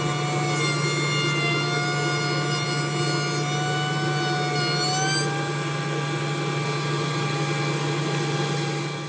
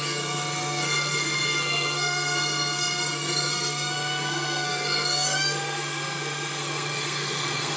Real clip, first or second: first